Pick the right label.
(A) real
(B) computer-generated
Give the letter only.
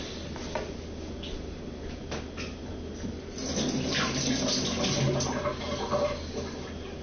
A